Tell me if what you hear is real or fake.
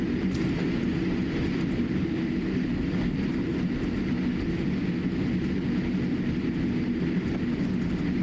real